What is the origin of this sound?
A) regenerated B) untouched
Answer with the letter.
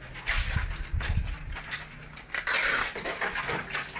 B